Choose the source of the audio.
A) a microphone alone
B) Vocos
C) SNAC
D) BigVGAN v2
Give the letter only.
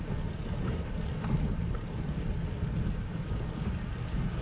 A